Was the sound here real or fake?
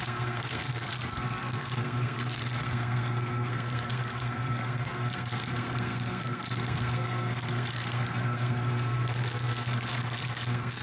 fake